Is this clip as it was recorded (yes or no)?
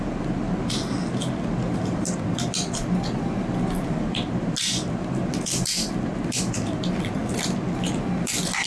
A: yes